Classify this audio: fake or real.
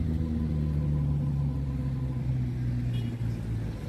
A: real